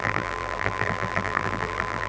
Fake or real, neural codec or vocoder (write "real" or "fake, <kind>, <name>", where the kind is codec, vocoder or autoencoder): fake, vocoder, BigVGAN v2